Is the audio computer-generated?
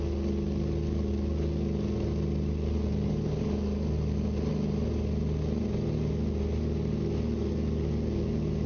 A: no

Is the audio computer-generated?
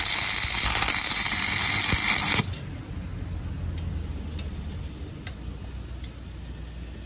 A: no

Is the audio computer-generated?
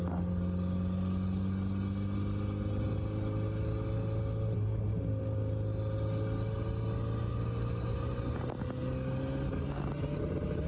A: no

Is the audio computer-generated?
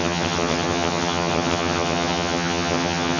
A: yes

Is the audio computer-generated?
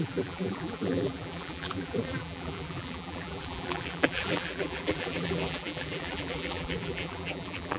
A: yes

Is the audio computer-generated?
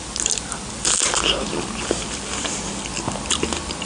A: no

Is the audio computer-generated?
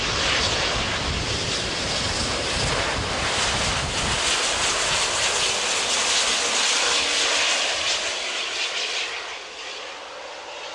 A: no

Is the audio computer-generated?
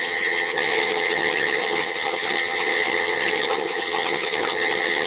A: yes